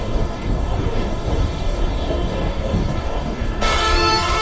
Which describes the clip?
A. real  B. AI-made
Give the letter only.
B